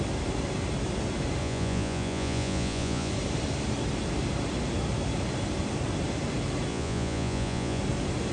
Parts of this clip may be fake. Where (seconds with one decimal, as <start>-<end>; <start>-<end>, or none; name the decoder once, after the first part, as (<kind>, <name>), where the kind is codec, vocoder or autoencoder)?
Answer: 1.4-3.1 (vocoder, Vocos); 6.7-7.8